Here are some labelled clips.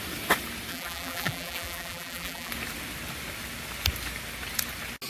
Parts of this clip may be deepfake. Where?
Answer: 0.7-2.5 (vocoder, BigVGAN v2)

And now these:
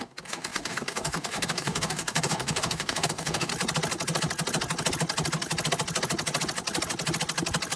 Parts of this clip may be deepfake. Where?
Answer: 0.0-3.5 (codec, DAC)

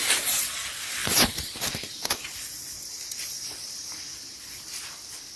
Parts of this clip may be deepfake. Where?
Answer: 1.0-4.2 (vocoder, BigVGAN v2)

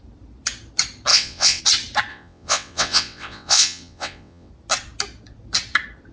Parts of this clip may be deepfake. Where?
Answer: 1.1-1.6 (vocoder, WaveNeXt); 2.1-4.5